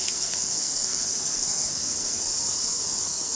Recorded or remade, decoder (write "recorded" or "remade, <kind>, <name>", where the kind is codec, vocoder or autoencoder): remade, codec, SNAC